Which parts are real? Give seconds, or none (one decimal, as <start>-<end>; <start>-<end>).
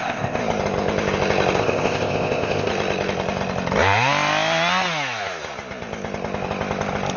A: 0.4-1.6; 2.7-7.2